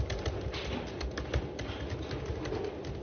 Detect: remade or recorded recorded